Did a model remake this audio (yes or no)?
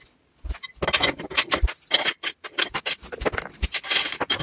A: no